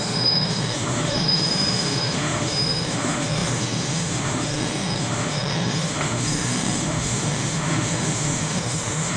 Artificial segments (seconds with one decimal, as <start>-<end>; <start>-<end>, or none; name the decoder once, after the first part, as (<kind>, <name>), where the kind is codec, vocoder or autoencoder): 0.0-9.2 (autoencoder, DAC-VAE)